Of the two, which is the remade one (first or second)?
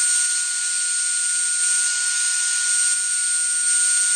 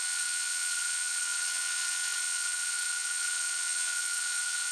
second